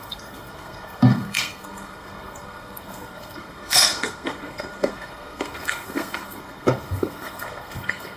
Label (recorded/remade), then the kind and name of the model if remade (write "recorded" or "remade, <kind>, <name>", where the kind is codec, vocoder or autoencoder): remade, codec, SNAC